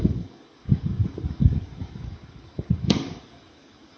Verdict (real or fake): fake